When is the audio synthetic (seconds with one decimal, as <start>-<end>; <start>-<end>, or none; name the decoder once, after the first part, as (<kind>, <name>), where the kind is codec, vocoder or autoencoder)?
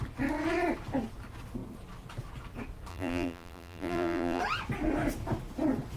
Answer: 2.9-4.4 (vocoder, BigVGAN v2)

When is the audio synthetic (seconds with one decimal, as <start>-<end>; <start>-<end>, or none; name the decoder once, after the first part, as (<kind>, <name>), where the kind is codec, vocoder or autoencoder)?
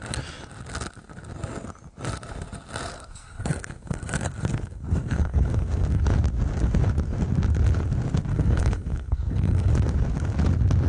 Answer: 2.9-6.0 (codec, SNAC); 8.3-9.7